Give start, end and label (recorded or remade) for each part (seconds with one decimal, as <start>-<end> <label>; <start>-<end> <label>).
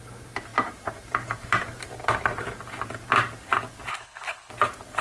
0.0-3.9 recorded; 3.9-4.5 remade; 4.5-5.0 recorded